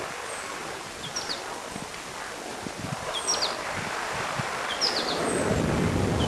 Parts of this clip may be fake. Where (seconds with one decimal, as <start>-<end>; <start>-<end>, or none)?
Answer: 0.6-1.4; 2.5-5.3